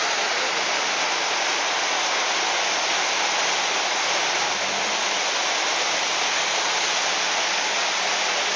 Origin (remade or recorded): recorded